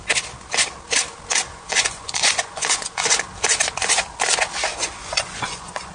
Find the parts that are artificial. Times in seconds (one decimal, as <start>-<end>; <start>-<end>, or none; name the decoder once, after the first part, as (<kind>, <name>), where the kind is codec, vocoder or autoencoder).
1.5-3.2 (vocoder, Vocos); 4.7-5.9